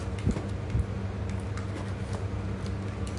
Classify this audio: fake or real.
real